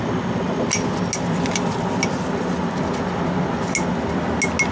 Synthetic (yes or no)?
no